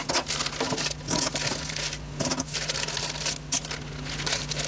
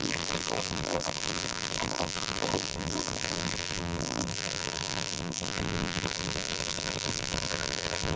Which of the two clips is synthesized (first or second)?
second